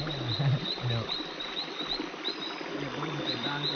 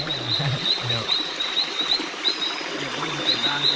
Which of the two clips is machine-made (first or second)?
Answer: second